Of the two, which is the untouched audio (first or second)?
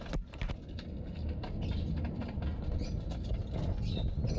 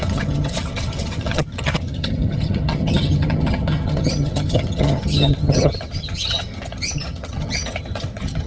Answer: first